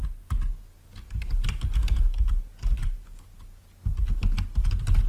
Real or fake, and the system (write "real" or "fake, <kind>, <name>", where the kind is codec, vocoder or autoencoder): real